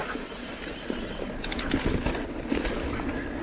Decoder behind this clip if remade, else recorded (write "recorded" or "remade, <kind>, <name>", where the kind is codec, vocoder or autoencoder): recorded